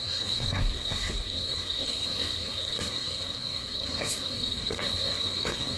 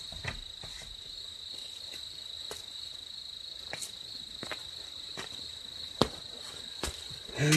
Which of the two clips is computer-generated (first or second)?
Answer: first